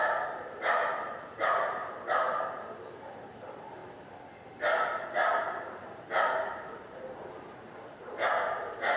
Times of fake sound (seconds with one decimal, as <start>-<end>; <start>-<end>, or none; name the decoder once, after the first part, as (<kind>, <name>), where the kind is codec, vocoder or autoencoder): 0.0-3.8 (vocoder, BigVGAN v2); 5.6-9.0